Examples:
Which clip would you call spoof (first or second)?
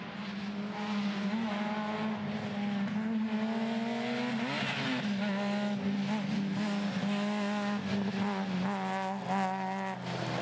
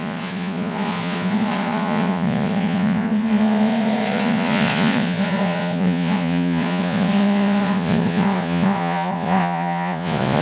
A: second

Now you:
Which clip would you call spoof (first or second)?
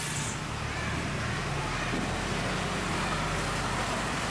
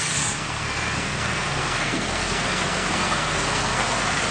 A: second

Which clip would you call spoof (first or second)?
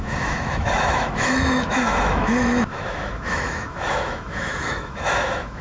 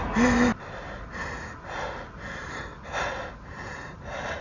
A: first